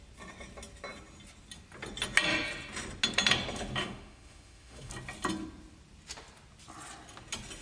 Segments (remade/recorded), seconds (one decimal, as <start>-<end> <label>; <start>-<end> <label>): 0.0-3.8 recorded; 3.8-4.9 remade; 4.9-7.6 recorded